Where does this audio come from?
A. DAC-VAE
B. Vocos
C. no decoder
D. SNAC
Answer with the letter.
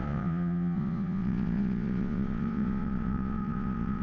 B